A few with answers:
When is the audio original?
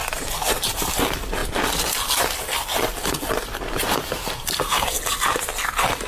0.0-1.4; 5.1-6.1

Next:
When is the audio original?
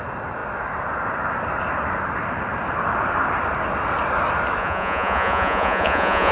0.0-4.6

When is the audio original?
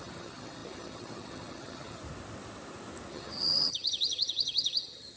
2.0-3.1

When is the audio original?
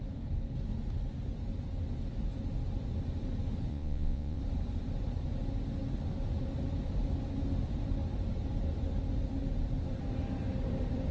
0.0-3.7; 4.4-11.1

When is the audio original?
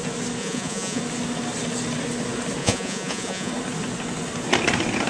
0.0-0.4; 1.0-2.6; 3.5-5.1